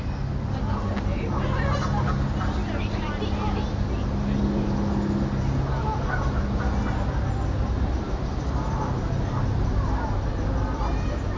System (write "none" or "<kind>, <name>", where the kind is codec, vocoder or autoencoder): none